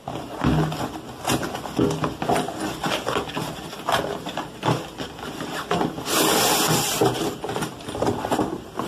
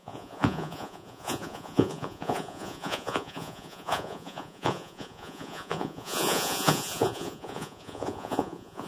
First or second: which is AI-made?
second